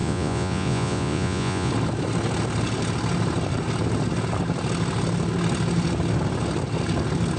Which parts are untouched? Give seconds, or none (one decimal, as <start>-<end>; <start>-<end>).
1.7-7.4